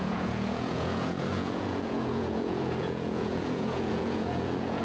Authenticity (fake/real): fake